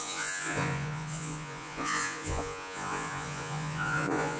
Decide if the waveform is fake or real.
fake